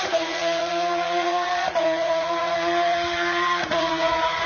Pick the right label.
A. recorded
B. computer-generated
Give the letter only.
B